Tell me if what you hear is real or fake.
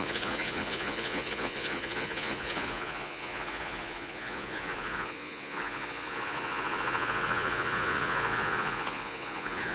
fake